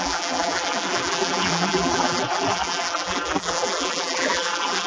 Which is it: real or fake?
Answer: fake